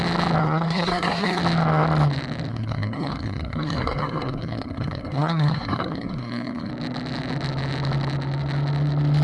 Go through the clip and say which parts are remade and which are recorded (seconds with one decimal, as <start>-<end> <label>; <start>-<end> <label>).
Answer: 0.0-0.4 recorded; 0.4-1.4 remade; 1.4-2.5 recorded; 2.5-6.7 remade; 6.7-9.2 recorded